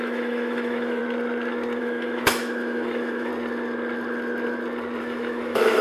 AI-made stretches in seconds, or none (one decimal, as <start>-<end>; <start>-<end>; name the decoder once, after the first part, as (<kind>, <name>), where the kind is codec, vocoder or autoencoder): 0.0-1.0 (autoencoder, DAC-VAE); 1.8-3.3; 5.0-5.8